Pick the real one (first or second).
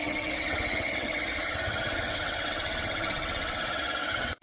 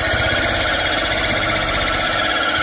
second